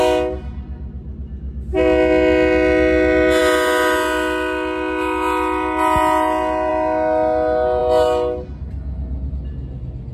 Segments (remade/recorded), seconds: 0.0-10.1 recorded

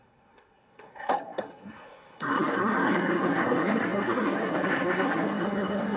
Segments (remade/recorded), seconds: 0.0-6.0 remade

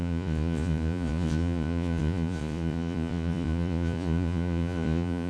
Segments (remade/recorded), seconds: 0.0-5.3 remade

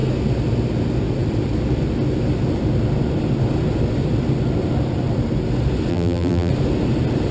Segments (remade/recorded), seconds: 0.0-5.9 recorded; 5.9-6.5 remade; 6.5-7.3 recorded

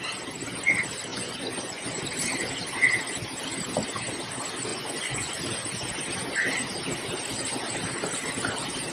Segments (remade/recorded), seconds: 0.0-1.1 recorded; 1.1-2.0 remade; 2.0-4.7 recorded; 4.7-5.3 remade; 5.3-8.9 recorded

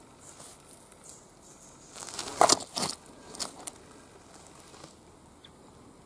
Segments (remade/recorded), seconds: 0.0-6.1 recorded

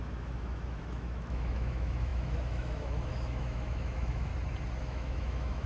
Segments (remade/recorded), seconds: 0.0-4.3 remade; 4.3-4.8 recorded; 4.8-5.7 remade

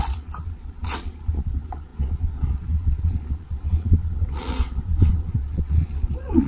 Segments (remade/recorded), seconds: 0.0-6.5 remade